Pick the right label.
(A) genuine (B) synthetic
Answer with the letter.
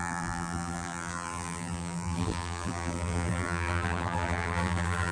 B